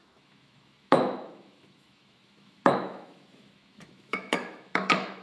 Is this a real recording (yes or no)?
no